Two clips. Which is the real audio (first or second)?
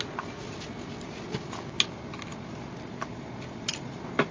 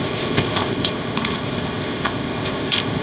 first